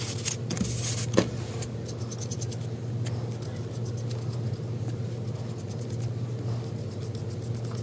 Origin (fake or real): real